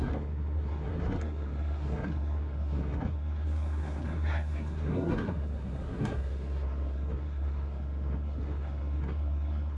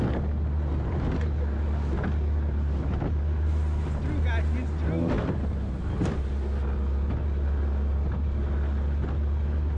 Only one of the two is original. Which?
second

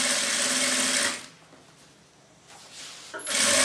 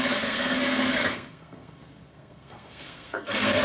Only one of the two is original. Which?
first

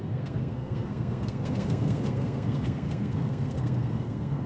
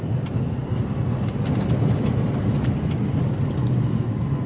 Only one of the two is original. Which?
second